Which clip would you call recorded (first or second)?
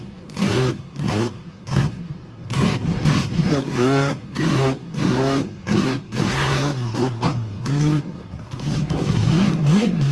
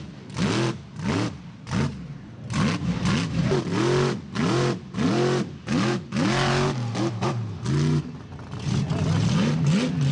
second